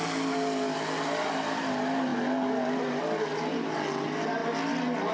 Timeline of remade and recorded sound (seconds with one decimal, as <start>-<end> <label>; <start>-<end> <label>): 0.0-5.1 recorded